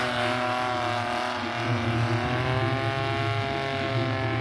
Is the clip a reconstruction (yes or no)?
no